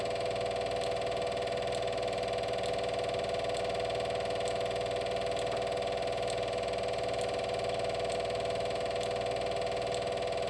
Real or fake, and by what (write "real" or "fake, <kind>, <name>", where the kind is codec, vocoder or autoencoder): real